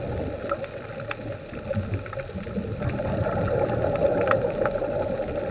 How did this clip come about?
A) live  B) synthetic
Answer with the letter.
A